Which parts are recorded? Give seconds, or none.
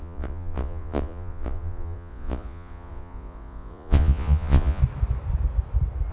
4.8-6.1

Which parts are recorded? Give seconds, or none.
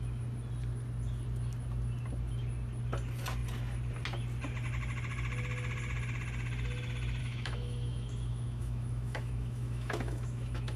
0.0-7.2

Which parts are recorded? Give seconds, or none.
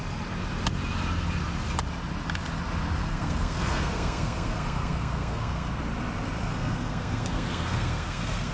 0.0-3.0; 5.8-6.4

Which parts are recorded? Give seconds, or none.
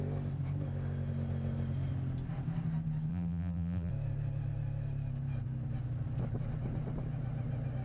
0.0-3.1; 3.9-7.8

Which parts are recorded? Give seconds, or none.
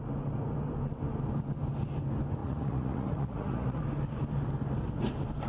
0.0-2.4; 3.8-5.5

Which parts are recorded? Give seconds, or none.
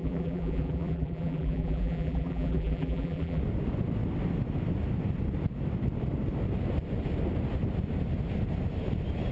3.4-9.3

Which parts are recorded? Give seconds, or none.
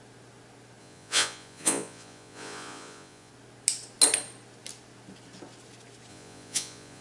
0.0-0.8; 3.3-6.1